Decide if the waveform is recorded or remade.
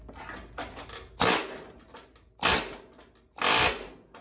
recorded